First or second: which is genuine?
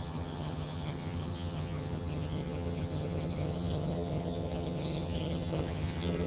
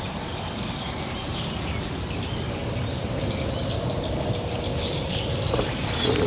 second